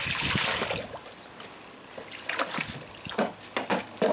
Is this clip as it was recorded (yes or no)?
yes